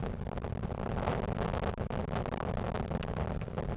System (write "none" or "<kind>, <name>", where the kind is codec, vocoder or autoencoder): none